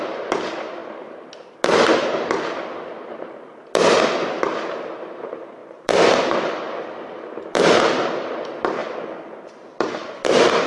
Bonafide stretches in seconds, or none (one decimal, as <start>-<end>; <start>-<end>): 0.0-0.8; 1.5-5.6; 8.3-8.8

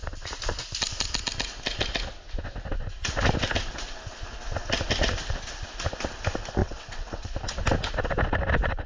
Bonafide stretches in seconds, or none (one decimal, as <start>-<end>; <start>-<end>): 0.0-6.6; 7.3-8.9